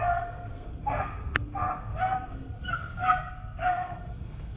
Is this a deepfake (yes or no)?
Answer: yes